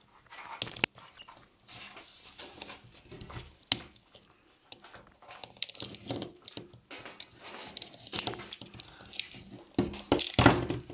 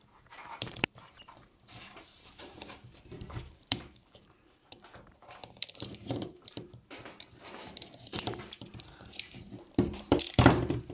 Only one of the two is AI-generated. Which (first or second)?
second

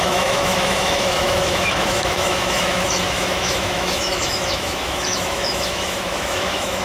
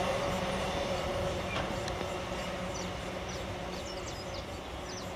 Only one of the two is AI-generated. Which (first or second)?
first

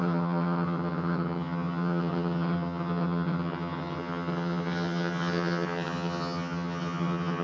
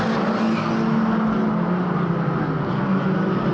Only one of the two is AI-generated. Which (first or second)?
first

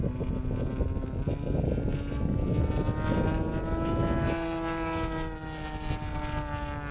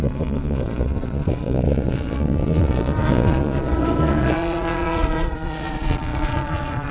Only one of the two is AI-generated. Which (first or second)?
second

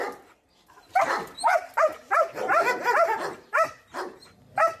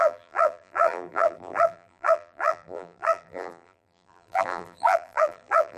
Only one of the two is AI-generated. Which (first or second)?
second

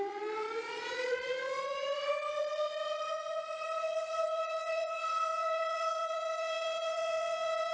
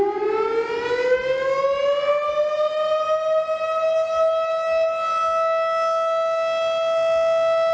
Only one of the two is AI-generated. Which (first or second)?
first